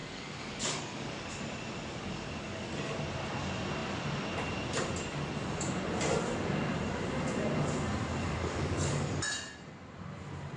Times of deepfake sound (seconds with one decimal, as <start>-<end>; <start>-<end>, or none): 0.0-1.4; 2.0-2.7; 8.2-9.1